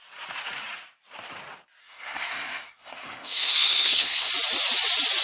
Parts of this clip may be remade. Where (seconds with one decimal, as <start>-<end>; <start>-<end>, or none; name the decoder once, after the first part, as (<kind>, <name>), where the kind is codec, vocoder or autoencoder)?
1.8-4.3 (codec, SNAC)